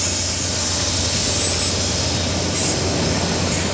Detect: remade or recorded recorded